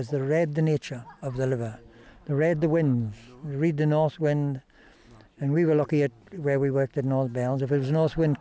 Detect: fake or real real